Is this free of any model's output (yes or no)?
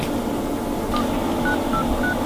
yes